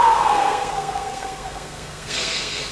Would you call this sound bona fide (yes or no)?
no